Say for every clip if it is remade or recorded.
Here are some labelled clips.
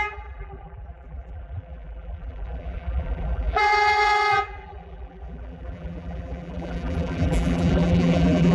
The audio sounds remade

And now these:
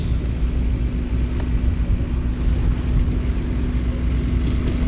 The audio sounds recorded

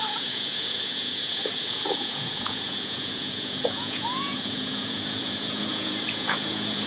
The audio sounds remade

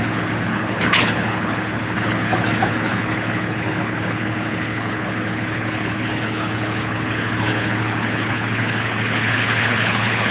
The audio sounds remade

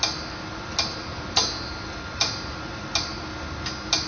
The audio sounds recorded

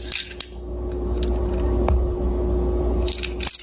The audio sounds recorded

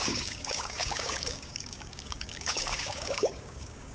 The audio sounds remade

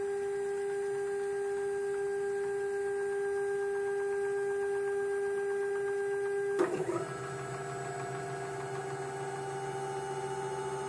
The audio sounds recorded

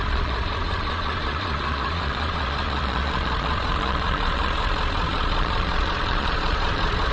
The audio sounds remade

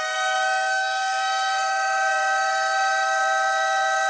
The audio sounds remade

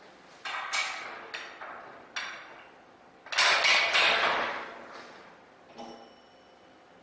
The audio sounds recorded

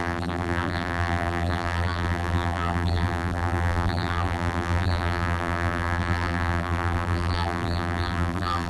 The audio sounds remade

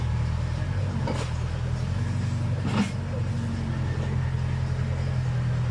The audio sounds recorded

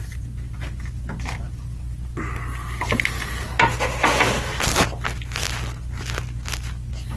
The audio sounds recorded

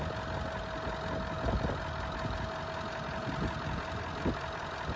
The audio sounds recorded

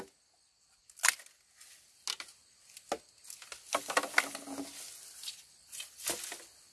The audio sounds recorded